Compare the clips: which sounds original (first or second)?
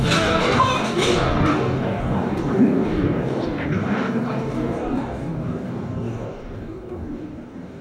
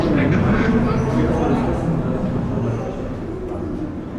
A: second